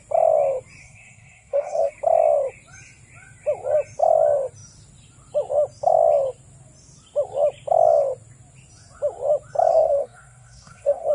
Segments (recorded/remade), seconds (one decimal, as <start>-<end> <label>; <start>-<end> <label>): 0.0-0.8 recorded; 0.8-1.9 remade; 1.9-9.7 recorded; 9.7-11.1 remade